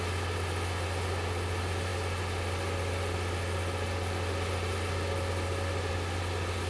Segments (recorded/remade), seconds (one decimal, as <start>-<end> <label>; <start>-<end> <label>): 0.0-6.7 recorded